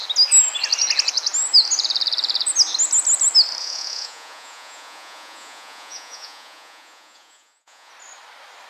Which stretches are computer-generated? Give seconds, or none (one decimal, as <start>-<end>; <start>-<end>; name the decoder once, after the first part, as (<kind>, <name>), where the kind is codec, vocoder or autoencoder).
3.6-7.9 (vocoder, Vocos)